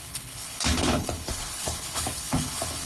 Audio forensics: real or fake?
fake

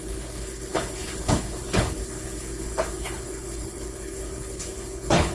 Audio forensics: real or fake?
fake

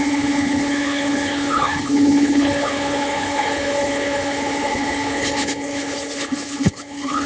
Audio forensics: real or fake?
fake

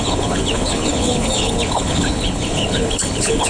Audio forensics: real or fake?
fake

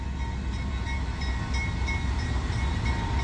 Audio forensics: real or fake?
real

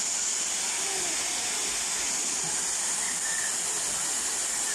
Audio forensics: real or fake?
real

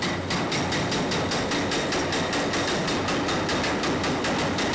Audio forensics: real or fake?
real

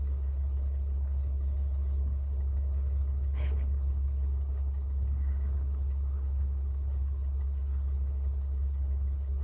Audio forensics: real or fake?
fake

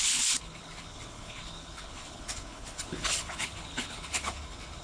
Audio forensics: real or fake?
fake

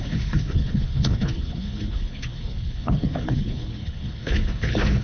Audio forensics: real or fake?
fake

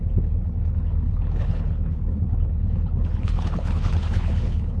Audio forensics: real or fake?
fake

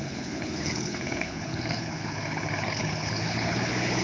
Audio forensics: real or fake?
fake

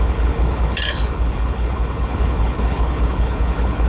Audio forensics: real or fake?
fake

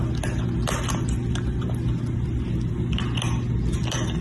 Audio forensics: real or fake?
real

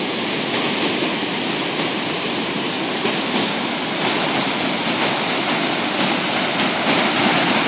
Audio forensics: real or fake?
real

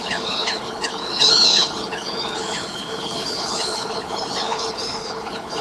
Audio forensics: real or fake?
fake